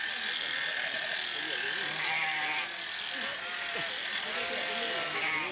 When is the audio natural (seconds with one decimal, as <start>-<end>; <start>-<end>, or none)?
0.0-5.5